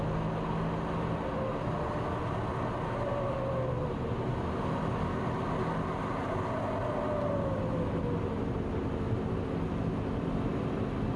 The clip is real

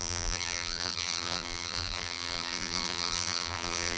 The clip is fake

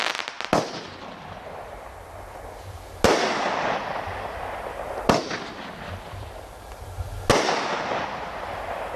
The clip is real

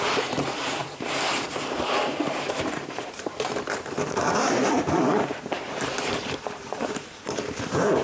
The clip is fake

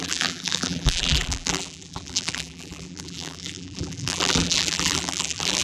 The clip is fake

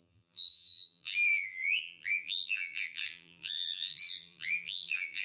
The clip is fake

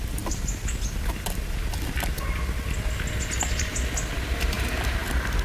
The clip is real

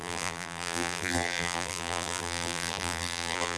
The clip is fake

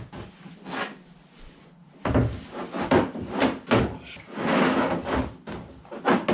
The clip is real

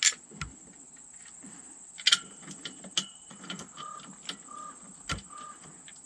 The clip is real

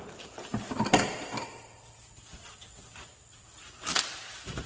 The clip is real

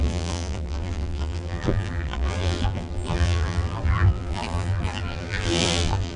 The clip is fake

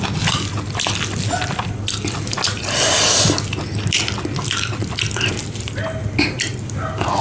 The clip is real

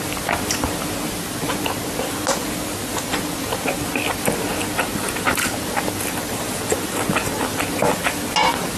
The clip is real